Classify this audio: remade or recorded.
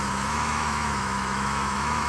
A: remade